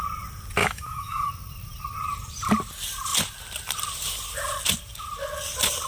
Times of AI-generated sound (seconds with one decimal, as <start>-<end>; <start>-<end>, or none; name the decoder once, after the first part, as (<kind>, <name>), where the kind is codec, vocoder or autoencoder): 0.6-1.3 (autoencoder, DAC-VAE)